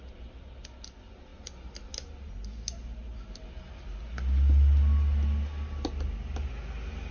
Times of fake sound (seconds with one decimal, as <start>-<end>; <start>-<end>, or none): none